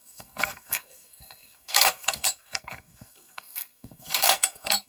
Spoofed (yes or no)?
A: yes